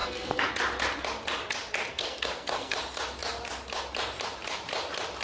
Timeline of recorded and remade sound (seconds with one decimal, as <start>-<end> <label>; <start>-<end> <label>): 0.0-0.5 remade; 0.5-1.9 recorded; 1.9-2.8 remade; 2.8-5.2 recorded